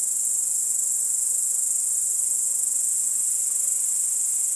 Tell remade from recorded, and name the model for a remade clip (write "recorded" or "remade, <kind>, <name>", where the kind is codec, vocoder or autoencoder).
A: remade, vocoder, Vocos